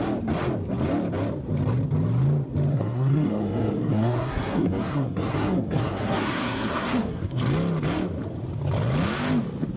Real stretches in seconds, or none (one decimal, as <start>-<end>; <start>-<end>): 0.0-2.7; 7.4-9.8